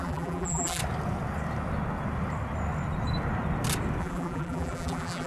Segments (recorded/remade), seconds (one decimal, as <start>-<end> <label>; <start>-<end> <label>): 0.0-0.8 remade; 0.8-4.0 recorded; 4.0-5.3 remade